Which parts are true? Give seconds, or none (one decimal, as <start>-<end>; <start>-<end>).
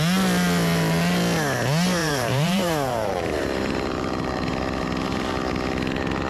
0.0-2.0; 4.5-6.3